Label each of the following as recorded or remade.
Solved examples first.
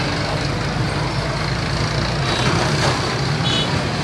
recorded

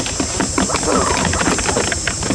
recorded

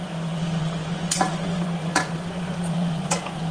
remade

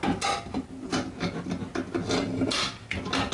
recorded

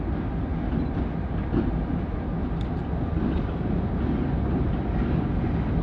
recorded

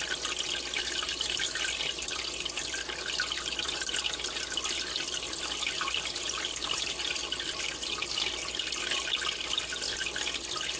recorded